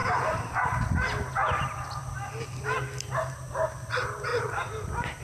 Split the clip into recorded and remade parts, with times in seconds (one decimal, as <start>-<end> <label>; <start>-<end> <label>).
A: 0.0-4.3 recorded; 4.3-5.2 remade